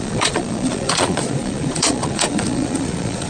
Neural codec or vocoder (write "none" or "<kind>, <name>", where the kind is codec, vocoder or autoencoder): vocoder, Vocos